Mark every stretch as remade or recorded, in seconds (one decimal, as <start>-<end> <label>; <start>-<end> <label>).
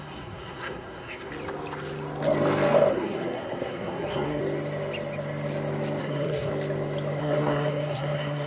0.0-1.3 remade; 1.3-2.9 recorded; 2.9-4.4 remade; 4.4-6.0 recorded; 6.0-6.5 remade; 6.5-7.2 recorded; 7.2-8.5 remade